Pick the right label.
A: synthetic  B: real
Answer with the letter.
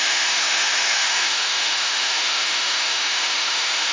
A